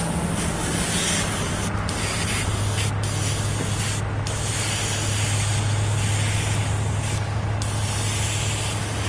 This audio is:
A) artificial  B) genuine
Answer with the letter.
B